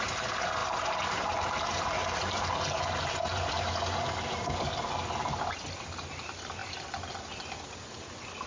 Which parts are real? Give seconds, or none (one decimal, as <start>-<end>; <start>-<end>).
0.0-8.5